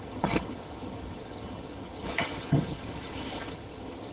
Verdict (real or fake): fake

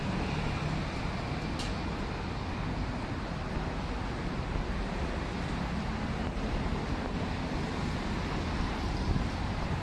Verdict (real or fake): real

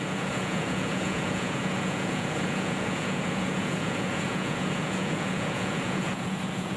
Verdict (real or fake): fake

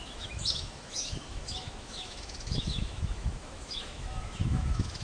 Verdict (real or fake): fake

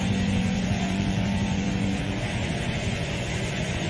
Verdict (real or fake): fake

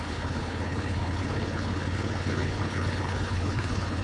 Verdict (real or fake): fake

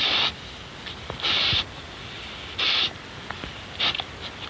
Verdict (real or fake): fake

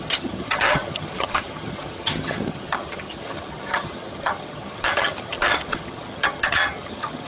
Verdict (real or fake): fake